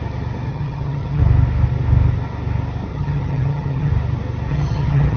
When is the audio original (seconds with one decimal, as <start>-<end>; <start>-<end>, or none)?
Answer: 0.0-0.5; 1.2-2.9; 3.9-4.5